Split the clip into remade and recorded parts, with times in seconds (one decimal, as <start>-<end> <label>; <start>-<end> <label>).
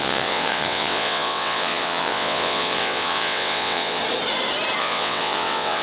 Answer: 0.0-4.0 remade; 4.0-4.8 recorded; 4.8-5.8 remade